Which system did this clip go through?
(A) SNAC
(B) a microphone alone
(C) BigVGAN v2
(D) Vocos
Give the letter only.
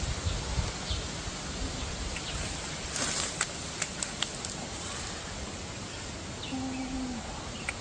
B